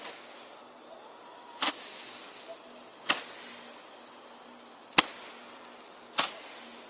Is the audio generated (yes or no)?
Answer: no